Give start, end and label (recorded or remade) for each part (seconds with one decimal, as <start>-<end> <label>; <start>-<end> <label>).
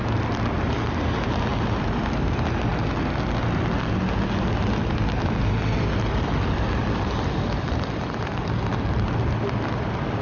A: 0.0-1.5 recorded; 1.5-2.1 remade; 2.1-10.2 recorded